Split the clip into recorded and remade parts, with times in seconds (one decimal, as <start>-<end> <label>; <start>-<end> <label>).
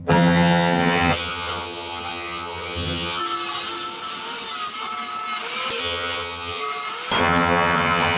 0.0-3.2 remade; 3.2-5.8 recorded; 5.8-6.6 remade; 6.6-7.2 recorded; 7.2-8.2 remade